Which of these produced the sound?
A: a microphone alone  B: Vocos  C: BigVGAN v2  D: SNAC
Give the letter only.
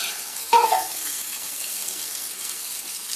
D